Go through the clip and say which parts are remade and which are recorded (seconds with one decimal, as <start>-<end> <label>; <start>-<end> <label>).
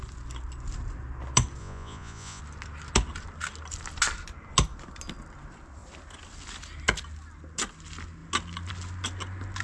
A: 0.0-1.6 recorded; 1.6-2.4 remade; 2.4-9.6 recorded